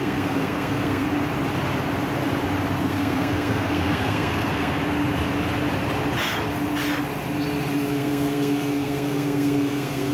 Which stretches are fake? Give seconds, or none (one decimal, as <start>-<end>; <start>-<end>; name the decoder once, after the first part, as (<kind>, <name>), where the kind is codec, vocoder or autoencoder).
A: 0.0-1.1 (codec, SNAC); 2.8-4.8; 7.9-10.1